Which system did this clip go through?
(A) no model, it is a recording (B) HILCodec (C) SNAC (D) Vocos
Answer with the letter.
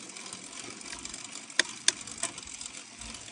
A